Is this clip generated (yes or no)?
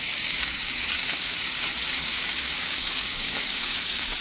yes